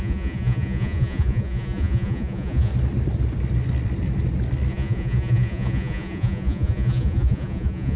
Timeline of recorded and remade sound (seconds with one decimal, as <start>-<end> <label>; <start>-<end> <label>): 0.0-2.7 remade; 2.7-4.7 recorded; 4.7-8.0 remade